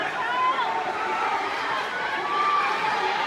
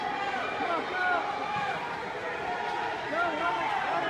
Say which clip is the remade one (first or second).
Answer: first